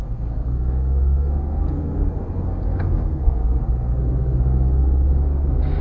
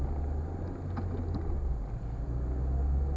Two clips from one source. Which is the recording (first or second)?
second